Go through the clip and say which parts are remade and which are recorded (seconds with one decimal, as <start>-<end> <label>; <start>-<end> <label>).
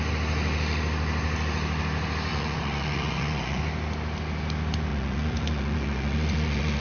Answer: 0.0-2.3 recorded; 2.3-3.6 remade; 3.6-4.9 recorded; 4.9-6.8 remade